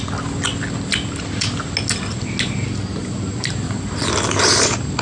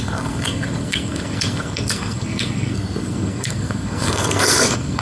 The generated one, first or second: second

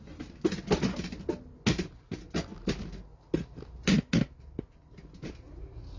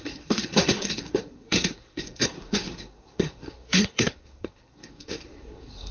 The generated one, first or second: second